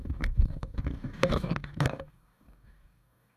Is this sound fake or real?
fake